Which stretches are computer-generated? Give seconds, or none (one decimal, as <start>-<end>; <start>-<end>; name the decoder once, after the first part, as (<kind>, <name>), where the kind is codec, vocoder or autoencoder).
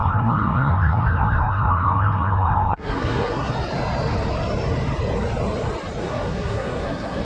0.0-3.5 (codec, SNAC); 6.0-7.2